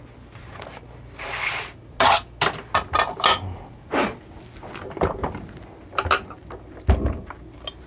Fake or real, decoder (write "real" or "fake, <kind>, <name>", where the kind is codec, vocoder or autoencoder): real